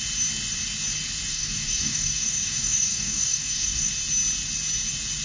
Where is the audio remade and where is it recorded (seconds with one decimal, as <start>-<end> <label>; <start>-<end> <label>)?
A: 0.0-1.3 recorded; 1.3-3.9 remade; 3.9-5.2 recorded

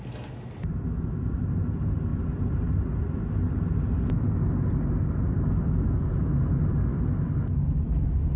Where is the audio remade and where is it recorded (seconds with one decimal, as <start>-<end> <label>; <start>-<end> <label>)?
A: 0.0-8.4 recorded